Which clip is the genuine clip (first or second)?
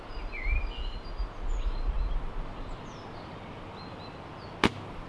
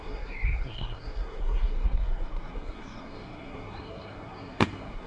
first